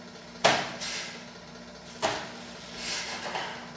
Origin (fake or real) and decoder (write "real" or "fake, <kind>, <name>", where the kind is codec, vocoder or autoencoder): real